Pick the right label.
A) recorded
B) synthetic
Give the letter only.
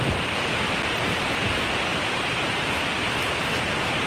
A